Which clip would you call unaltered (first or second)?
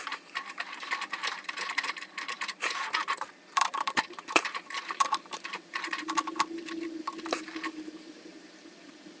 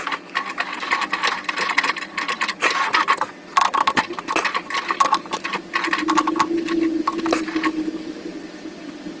second